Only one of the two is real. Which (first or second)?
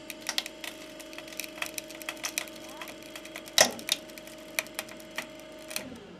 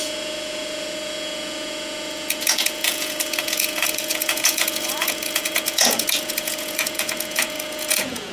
first